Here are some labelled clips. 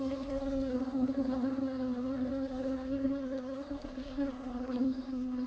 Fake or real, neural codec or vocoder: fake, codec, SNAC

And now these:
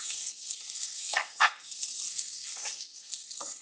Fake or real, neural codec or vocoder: fake, codec, SNAC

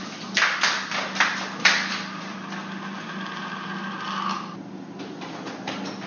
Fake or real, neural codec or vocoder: real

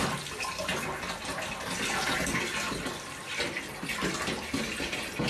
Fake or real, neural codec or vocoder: real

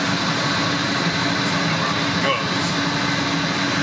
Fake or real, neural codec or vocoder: real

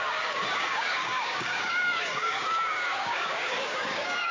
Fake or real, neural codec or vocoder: fake, codec, DAC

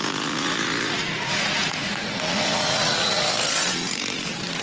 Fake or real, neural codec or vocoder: fake, vocoder, Vocos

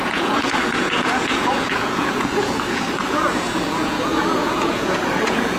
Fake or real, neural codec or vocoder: fake, vocoder, Vocos